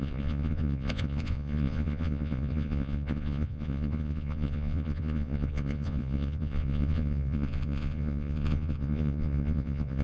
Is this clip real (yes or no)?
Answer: no